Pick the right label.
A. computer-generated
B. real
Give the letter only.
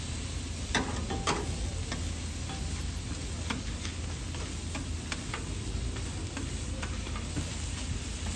B